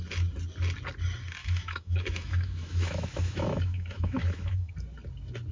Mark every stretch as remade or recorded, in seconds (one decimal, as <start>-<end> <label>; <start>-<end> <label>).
0.0-1.4 recorded; 1.4-4.7 remade; 4.7-5.5 recorded